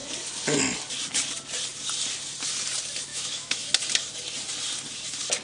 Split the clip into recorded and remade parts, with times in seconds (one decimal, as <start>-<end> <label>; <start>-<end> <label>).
0.0-3.1 recorded; 3.1-3.7 remade; 3.7-5.4 recorded